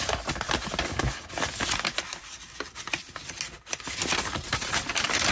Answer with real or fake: real